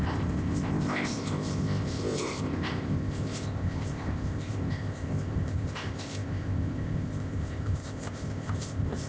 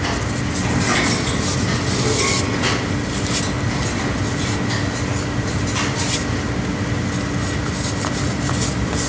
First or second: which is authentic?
second